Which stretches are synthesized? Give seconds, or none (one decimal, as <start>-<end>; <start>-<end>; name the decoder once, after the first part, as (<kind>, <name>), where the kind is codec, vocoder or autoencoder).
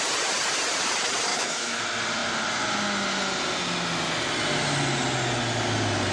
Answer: 1.3-1.8 (autoencoder, DAC-VAE)